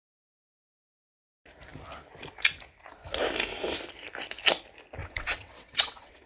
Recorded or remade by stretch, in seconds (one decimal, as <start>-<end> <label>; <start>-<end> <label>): 0.0-5.0 recorded; 5.0-6.3 remade